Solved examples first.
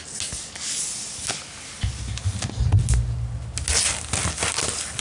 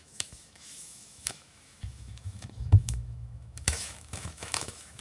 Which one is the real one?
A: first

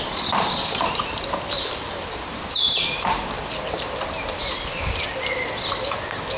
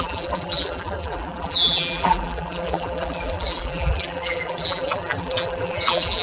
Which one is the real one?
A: first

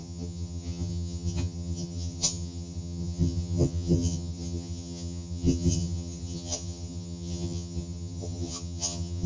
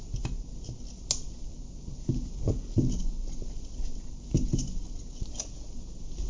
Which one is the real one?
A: second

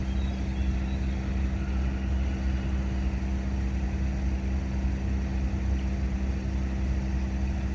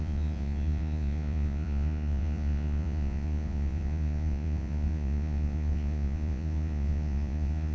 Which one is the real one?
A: first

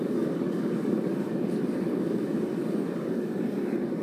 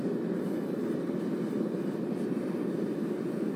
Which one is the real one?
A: second